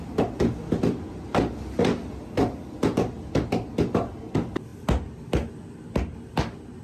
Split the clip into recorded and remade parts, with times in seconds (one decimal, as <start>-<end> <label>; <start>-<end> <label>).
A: 0.0-6.8 recorded